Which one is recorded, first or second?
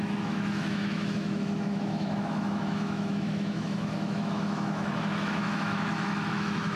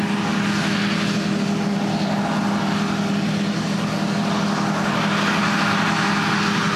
second